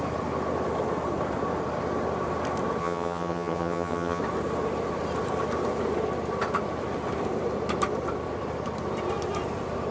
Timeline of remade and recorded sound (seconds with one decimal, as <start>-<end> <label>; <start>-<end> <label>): 0.0-2.8 recorded; 2.8-4.2 remade; 4.2-9.9 recorded